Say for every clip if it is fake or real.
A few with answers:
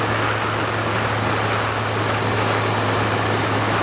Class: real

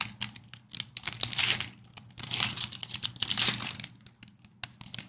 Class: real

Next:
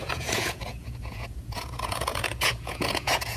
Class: fake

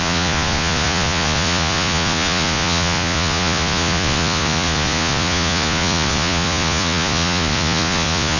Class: fake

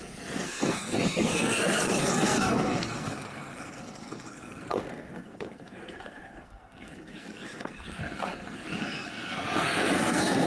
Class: fake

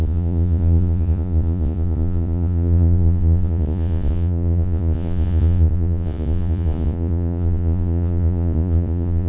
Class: fake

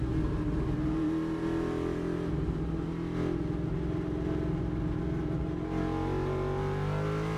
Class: real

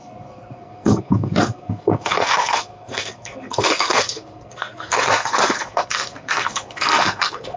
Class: fake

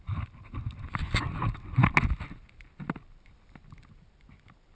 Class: real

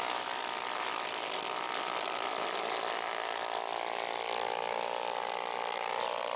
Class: real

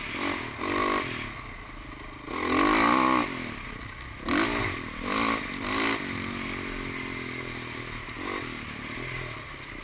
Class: real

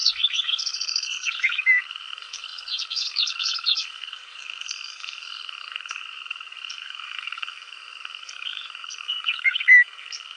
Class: fake